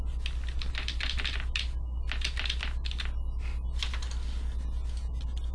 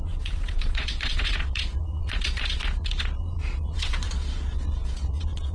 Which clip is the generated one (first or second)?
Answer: second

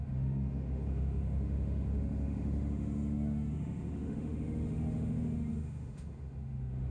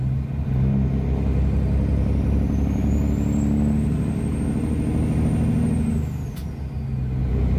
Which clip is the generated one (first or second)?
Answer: first